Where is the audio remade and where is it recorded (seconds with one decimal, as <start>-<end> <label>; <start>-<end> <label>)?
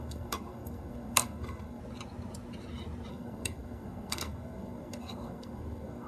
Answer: 0.0-1.8 remade; 1.8-3.1 recorded; 3.1-6.1 remade